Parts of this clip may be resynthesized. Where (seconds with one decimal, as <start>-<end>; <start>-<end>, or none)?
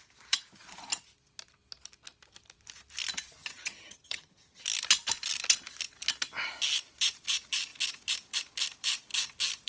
3.4-4.6